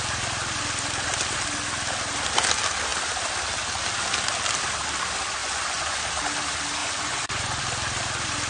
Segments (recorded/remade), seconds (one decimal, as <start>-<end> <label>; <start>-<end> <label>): 0.0-5.4 recorded; 5.4-6.0 remade; 6.0-6.8 recorded; 6.8-7.6 remade; 7.6-8.5 recorded